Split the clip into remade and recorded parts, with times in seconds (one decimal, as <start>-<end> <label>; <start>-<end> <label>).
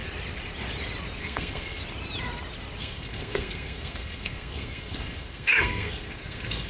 0.0-1.2 recorded; 1.2-1.8 remade; 1.8-2.8 recorded; 2.8-6.7 remade